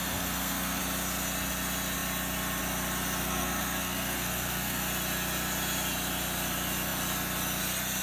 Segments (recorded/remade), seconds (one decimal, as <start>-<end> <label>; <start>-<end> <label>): 0.0-0.8 remade; 0.8-3.2 recorded; 3.2-4.8 remade; 4.8-8.0 recorded